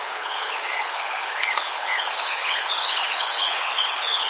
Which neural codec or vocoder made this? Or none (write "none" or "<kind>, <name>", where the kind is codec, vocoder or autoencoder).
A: codec, HILCodec